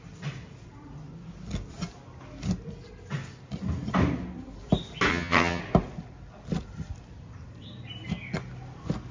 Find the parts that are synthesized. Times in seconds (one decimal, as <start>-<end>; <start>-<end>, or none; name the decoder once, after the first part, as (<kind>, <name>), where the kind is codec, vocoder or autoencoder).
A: 5.1-5.6 (vocoder, HiFi-GAN)